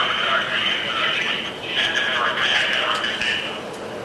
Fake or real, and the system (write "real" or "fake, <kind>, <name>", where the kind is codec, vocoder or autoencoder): real